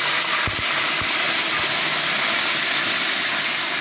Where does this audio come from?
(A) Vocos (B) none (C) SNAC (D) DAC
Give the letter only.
B